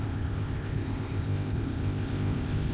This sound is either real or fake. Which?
fake